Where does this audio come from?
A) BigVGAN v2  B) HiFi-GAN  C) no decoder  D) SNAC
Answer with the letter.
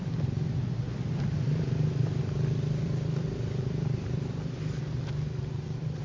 A